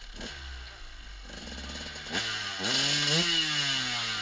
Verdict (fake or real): real